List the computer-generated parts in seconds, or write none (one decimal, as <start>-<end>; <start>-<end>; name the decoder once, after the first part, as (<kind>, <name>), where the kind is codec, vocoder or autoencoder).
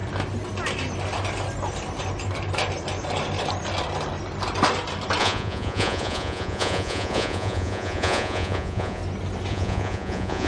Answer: 5.2-9.0 (vocoder, Vocos); 9.5-10.5